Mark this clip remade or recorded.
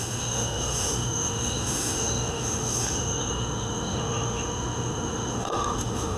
remade